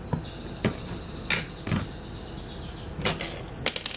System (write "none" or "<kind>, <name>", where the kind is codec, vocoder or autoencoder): none